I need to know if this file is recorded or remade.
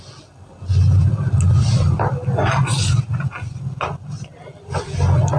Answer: recorded